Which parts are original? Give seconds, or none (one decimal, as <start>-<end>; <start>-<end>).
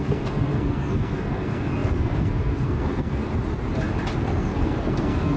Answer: 3.2-4.2